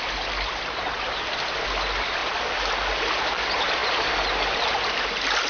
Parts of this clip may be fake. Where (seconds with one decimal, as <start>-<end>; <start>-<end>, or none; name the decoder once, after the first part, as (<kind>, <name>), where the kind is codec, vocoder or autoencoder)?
none

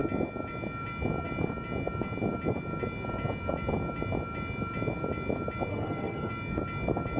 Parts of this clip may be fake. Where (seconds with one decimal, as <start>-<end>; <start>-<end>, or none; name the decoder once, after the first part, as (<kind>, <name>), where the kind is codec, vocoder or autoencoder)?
5.7-6.3 (codec, SNAC)

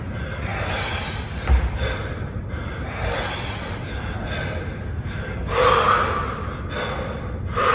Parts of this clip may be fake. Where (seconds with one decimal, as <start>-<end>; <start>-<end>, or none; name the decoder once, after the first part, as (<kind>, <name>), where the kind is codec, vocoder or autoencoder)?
none

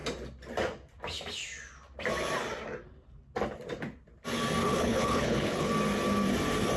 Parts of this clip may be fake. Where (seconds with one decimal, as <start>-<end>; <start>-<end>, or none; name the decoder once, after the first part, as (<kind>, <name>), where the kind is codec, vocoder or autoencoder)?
4.6-5.7 (codec, HILCodec)

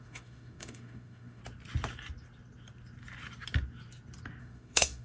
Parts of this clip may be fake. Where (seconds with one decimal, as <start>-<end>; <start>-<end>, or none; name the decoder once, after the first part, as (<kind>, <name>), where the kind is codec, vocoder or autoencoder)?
0.0-1.4 (autoencoder, DAC-VAE); 4.4-5.0

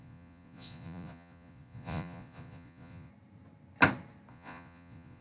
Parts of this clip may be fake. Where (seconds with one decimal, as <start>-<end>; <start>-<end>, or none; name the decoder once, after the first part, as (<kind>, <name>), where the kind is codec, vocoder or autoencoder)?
0.0-3.1 (vocoder, Vocos); 4.3-5.2

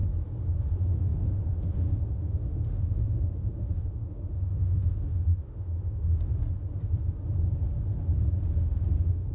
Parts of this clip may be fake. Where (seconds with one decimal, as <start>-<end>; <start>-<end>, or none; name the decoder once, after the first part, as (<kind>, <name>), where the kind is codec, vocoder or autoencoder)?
0.6-6.3 (autoencoder, DAC-VAE); 8.6-9.3

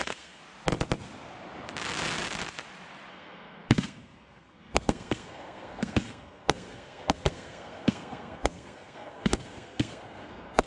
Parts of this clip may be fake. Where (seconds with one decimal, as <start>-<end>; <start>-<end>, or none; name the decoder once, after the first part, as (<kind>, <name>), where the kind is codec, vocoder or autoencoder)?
0.0-0.4 (codec, SNAC); 3.1-10.7